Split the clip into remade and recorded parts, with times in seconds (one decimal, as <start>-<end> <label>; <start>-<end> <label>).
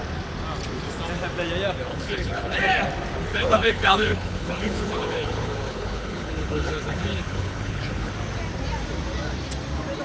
0.0-1.9 recorded; 1.9-2.6 remade; 2.6-3.3 recorded; 3.3-8.1 remade; 8.1-10.0 recorded